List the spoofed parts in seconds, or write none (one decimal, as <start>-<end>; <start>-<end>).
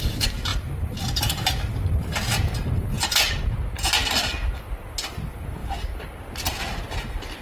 0.5-3.3